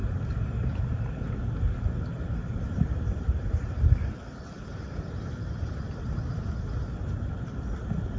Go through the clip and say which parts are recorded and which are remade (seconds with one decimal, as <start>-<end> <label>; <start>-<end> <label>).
0.0-1.4 remade; 1.4-2.1 recorded; 2.1-3.8 remade; 3.8-4.7 recorded; 4.7-6.4 remade; 6.4-8.2 recorded